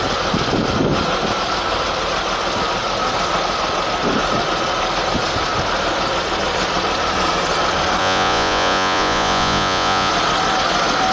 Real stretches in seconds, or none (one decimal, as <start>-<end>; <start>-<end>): 0.0-8.0; 10.1-11.1